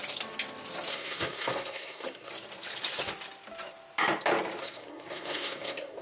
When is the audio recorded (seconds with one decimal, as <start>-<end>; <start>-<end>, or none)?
0.0-0.9; 2.3-4.6

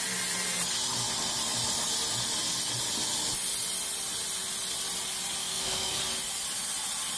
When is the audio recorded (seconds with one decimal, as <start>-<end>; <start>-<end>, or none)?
0.0-5.4; 6.0-7.2

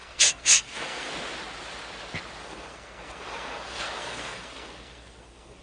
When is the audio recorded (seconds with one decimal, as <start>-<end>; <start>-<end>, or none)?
1.1-2.4

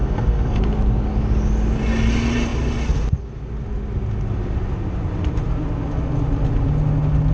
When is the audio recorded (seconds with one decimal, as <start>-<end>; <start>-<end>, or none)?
0.6-7.3

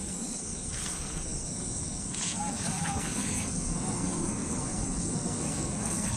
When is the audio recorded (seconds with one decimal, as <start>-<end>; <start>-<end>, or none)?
none

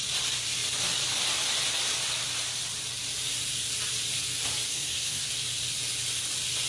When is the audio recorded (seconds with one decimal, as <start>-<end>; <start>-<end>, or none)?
0.0-4.7; 5.3-6.7